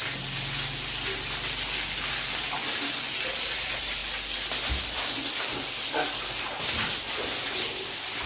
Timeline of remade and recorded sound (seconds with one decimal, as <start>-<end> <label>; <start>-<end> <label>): 0.0-8.3 recorded

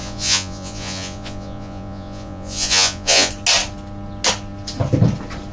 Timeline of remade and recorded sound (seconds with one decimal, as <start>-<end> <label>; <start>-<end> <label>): 0.0-3.3 remade; 3.3-5.5 recorded

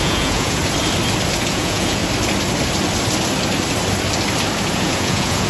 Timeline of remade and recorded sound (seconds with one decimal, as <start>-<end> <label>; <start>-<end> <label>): 0.0-0.6 remade; 0.6-1.5 recorded; 1.5-2.0 remade; 2.0-4.7 recorded; 4.7-5.5 remade

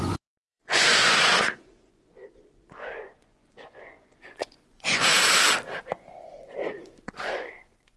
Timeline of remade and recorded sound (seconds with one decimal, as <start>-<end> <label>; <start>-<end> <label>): 0.0-5.1 remade; 5.1-5.8 recorded; 5.8-8.0 remade

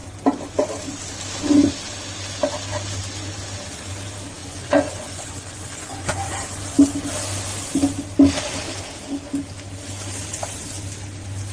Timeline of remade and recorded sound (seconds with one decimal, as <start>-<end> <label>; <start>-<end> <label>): 0.0-4.4 recorded; 4.4-6.3 remade; 6.3-11.5 recorded

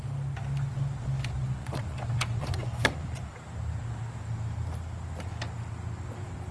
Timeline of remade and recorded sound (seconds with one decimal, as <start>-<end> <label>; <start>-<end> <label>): 0.0-1.6 recorded; 1.6-3.3 remade; 3.3-6.5 recorded

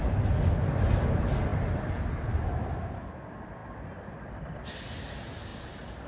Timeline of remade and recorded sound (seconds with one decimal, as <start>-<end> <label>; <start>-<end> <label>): 0.0-6.1 recorded